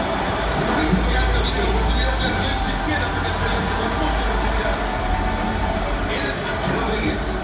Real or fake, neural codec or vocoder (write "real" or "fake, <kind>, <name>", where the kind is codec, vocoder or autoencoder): real